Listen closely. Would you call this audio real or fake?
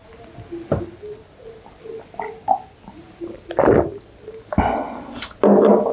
real